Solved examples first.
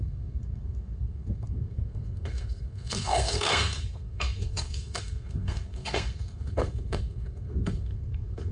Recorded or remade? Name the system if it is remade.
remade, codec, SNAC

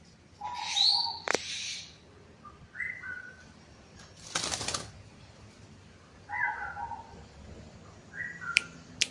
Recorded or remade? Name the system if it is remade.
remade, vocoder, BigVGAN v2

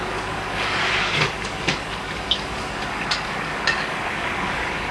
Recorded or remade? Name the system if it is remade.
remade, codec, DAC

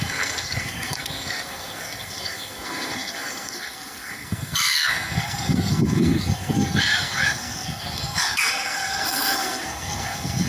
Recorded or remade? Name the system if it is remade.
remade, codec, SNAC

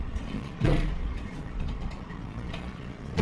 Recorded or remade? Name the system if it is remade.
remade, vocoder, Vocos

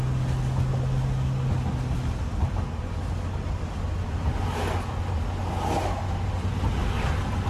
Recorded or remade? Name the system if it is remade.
recorded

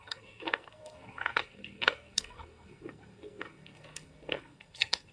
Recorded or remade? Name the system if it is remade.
remade, codec, SNAC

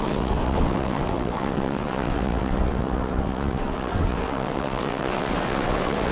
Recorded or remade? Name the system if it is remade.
remade, vocoder, WaveNeXt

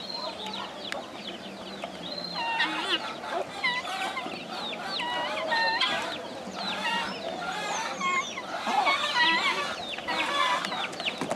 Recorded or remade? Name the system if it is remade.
recorded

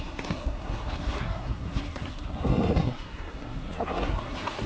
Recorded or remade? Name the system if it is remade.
remade, codec, SNAC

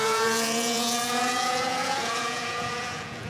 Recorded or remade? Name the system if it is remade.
remade, vocoder, Vocos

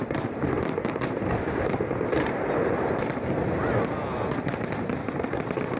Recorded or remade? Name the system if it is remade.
remade, vocoder, BigVGAN v2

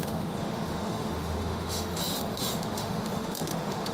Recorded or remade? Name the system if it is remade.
remade, autoencoder, DAC-VAE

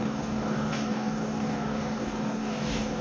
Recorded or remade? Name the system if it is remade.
remade, codec, DAC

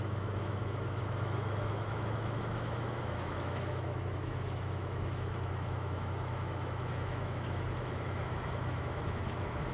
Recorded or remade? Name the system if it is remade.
remade, autoencoder, DAC-VAE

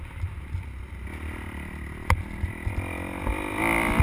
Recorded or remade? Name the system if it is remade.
remade, vocoder, BigVGAN v2